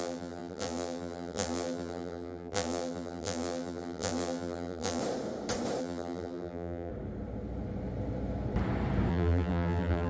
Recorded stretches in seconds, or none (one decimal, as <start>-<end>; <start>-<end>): 5.0-5.8; 6.9-9.1